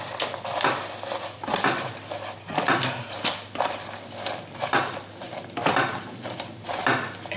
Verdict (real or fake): fake